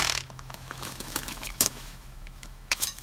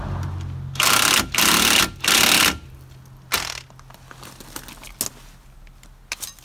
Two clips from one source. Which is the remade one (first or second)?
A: first